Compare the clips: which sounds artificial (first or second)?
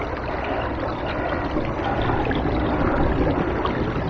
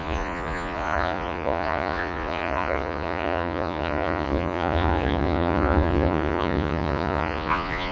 second